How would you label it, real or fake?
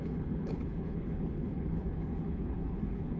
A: fake